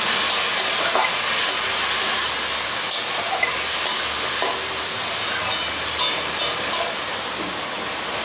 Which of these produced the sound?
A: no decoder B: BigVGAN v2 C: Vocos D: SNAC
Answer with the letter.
A